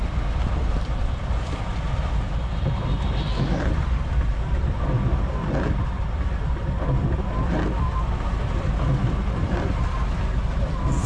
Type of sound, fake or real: fake